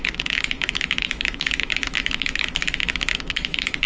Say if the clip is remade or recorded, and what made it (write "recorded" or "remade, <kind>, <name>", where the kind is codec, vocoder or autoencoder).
remade, autoencoder, DAC-VAE